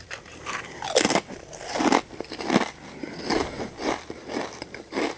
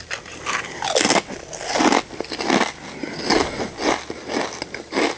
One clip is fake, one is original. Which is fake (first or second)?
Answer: first